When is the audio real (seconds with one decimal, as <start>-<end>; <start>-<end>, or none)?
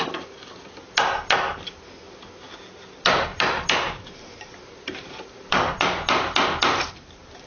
0.0-3.3